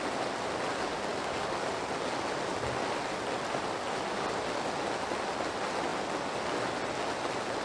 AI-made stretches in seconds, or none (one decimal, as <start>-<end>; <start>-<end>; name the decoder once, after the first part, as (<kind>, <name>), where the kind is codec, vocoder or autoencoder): 1.1-1.7 (codec, DAC)